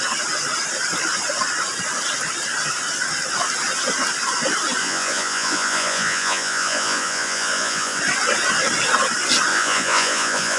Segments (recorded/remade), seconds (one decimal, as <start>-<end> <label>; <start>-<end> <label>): 0.0-4.8 recorded; 4.8-8.0 remade; 8.0-9.5 recorded; 9.5-10.6 remade